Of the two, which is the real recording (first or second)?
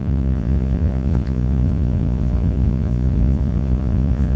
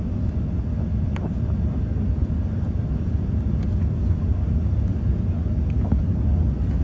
second